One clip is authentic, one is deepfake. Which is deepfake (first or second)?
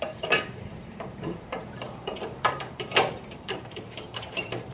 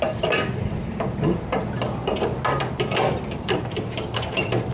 first